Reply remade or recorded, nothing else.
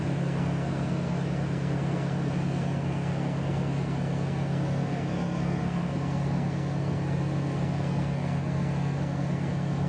remade